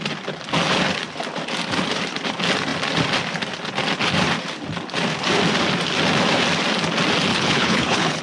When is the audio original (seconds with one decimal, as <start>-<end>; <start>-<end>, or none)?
0.0-7.3